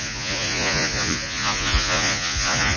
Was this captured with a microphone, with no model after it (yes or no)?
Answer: no